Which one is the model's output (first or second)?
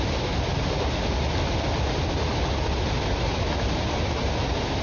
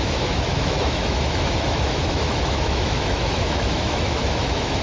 second